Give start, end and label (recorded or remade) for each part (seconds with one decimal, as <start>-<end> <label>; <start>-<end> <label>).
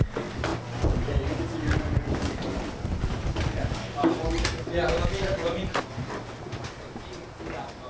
0.0-7.9 recorded